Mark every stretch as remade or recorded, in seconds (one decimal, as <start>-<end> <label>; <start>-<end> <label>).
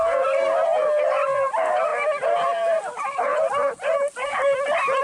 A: 0.0-5.0 recorded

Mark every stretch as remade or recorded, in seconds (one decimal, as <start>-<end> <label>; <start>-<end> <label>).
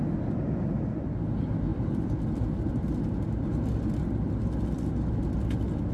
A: 0.0-5.9 recorded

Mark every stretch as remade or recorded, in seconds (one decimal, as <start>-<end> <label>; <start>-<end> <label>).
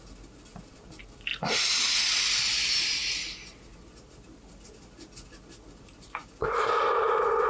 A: 0.0-7.5 recorded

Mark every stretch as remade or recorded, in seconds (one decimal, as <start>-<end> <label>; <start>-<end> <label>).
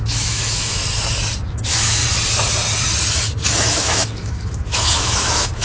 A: 0.0-0.8 remade; 0.8-1.5 recorded; 1.5-2.0 remade; 2.0-3.6 recorded; 3.6-5.6 remade